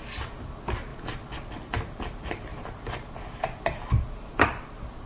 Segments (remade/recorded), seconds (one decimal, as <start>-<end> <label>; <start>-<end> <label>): 0.0-2.5 recorded; 2.5-5.1 remade